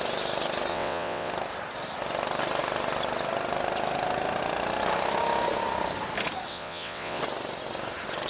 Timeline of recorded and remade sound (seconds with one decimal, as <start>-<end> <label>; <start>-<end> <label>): 0.0-0.7 recorded; 0.7-1.3 remade; 1.3-6.5 recorded; 6.5-7.2 remade; 7.2-8.3 recorded